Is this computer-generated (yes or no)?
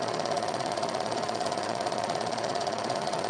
yes